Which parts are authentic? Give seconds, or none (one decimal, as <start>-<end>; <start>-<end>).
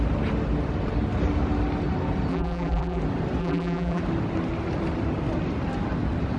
0.0-2.3; 3.0-3.4; 4.0-6.4